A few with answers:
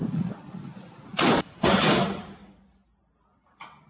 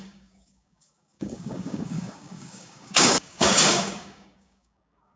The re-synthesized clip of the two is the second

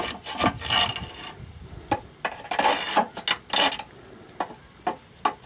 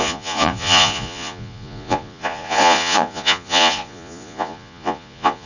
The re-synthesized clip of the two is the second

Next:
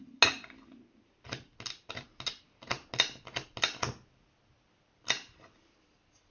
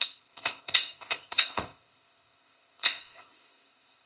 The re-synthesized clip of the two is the second